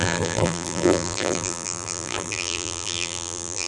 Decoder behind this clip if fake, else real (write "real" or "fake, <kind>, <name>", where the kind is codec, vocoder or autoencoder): fake, vocoder, BigVGAN v2